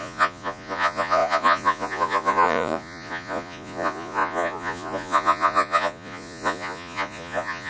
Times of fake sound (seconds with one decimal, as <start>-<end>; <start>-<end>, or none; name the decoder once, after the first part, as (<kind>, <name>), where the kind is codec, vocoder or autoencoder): 0.0-7.7 (vocoder, Vocos)